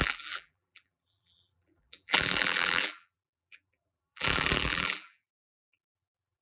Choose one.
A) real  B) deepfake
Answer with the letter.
B